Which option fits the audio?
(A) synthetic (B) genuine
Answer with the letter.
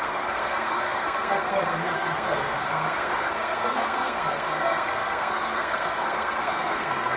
A